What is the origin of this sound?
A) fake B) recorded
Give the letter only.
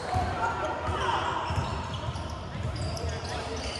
A